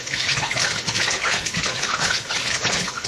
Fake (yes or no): yes